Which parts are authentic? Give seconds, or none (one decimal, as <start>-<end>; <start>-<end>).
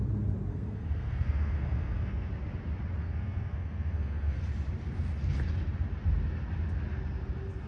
0.0-0.5; 2.3-3.0; 4.4-7.7